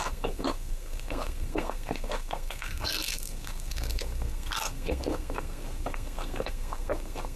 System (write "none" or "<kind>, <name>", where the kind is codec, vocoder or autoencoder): codec, SNAC